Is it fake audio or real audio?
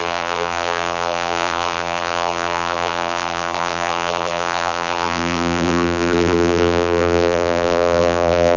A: fake